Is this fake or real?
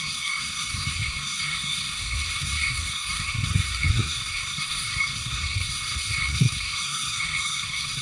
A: fake